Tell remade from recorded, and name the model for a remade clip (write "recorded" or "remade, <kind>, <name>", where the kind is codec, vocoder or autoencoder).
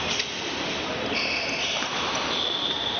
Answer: recorded